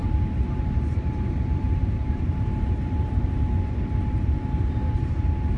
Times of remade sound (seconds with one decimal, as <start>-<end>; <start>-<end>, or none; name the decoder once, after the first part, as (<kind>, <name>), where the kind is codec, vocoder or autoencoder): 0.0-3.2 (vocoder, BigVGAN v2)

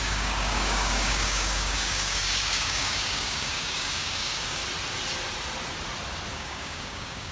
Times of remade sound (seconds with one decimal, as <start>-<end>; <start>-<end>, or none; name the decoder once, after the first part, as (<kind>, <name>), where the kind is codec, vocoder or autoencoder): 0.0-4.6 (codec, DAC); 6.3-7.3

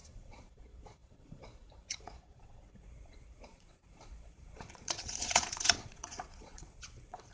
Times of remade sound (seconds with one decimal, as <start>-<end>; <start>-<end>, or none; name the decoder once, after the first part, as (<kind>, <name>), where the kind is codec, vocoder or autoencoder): 0.0-7.3 (vocoder, Vocos)

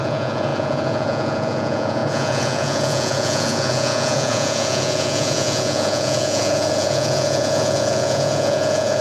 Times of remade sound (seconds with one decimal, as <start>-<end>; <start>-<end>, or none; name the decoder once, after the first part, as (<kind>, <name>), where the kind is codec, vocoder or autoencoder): 0.0-9.0 (vocoder, Vocos)

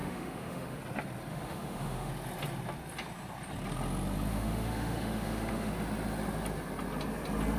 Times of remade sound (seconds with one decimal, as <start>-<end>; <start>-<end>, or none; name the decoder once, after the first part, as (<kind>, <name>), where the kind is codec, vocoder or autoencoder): 0.0-0.8 (autoencoder, DAC-VAE); 1.3-2.1; 4.3-5.7